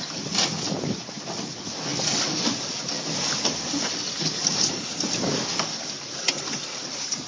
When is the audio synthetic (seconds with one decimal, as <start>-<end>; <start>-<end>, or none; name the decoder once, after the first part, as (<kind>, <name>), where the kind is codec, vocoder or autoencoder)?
none